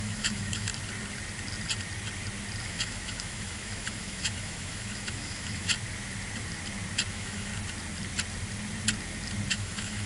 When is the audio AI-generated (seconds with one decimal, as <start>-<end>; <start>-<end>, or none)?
0.0-0.7; 2.6-5.7; 7.1-7.5; 9.5-10.1